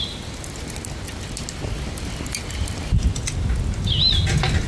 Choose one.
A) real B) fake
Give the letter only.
A